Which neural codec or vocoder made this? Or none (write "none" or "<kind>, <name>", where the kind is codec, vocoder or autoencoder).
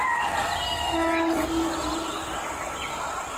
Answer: none